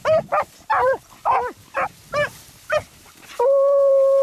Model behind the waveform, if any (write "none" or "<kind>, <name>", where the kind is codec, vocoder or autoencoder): vocoder, BigVGAN v2